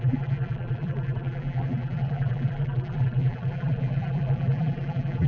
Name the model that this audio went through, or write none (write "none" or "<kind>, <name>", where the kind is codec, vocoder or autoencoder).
vocoder, BigVGAN v2